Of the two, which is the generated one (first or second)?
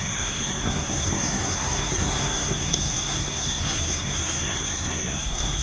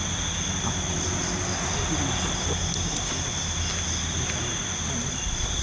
first